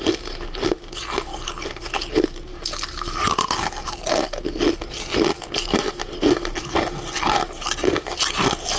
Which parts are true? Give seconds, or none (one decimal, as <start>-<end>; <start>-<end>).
0.0-8.8